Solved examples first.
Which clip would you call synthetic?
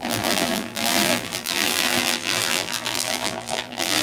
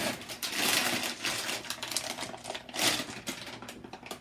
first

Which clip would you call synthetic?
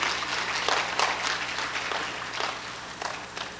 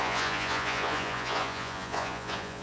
second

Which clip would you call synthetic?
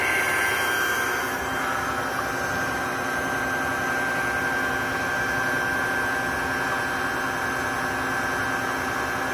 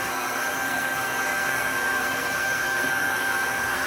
second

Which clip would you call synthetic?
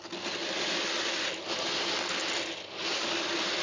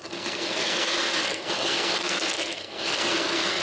second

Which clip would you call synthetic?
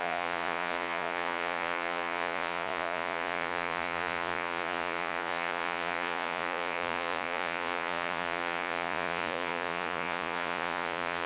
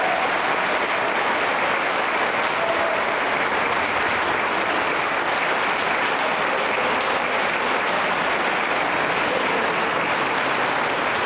first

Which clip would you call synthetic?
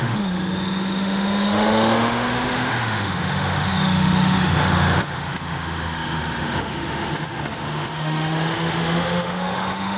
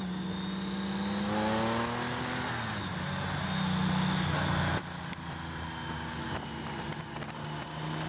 first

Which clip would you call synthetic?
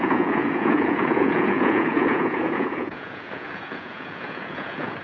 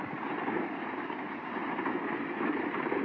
first